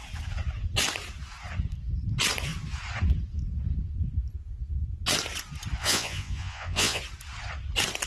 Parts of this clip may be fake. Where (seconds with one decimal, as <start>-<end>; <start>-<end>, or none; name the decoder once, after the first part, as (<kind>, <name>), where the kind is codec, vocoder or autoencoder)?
5.8-7.0 (vocoder, Vocos)